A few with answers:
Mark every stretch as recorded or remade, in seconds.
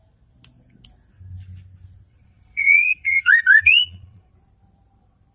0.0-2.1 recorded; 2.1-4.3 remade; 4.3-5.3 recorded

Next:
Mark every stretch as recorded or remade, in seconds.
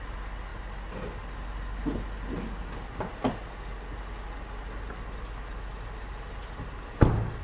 0.0-7.4 recorded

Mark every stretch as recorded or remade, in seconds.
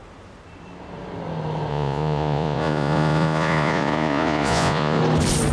0.0-1.7 recorded; 1.7-5.0 remade; 5.0-5.5 recorded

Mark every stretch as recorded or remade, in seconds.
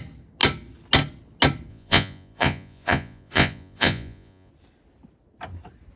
0.0-1.7 recorded; 1.7-4.5 remade; 4.5-6.0 recorded